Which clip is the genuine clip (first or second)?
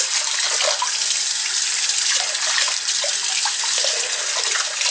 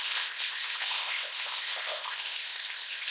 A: first